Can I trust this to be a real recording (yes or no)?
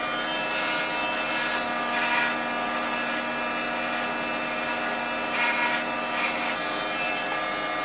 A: yes